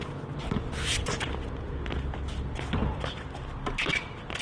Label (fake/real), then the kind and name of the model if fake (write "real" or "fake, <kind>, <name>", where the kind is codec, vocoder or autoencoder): real